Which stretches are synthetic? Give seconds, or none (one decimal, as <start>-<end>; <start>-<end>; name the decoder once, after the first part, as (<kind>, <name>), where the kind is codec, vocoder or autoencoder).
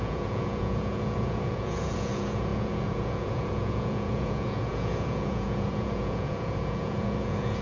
0.0-7.6 (vocoder, Vocos)